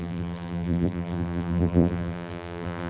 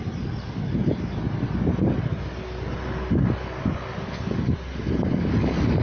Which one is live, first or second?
second